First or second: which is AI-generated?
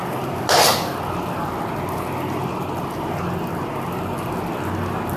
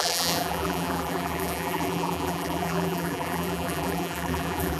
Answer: second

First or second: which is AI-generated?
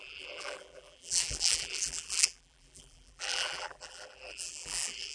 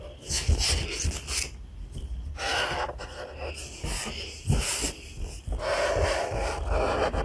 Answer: first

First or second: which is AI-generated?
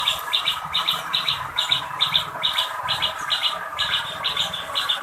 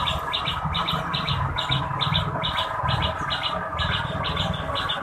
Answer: first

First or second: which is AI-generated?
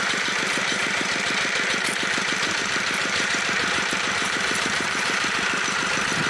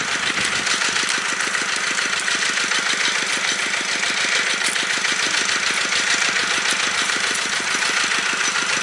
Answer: first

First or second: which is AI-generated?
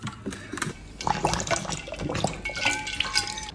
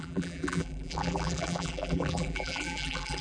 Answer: second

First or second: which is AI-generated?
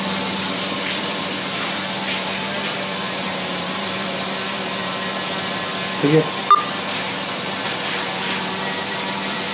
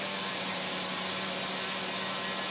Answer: first